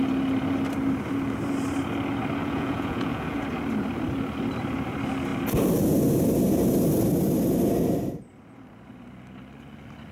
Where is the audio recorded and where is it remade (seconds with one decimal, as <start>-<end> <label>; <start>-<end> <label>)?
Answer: 0.0-2.4 recorded; 2.4-3.4 remade; 3.4-10.1 recorded

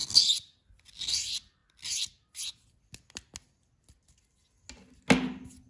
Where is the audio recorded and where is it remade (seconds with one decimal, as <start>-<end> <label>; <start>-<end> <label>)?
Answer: 0.0-5.7 recorded

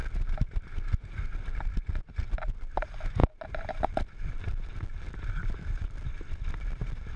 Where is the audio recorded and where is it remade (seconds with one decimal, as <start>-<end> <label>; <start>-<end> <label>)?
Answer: 0.0-7.2 recorded